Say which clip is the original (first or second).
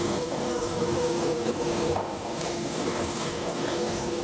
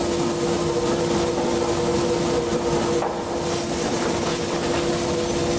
second